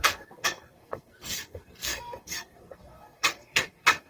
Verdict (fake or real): fake